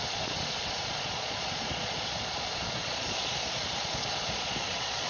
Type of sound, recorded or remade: remade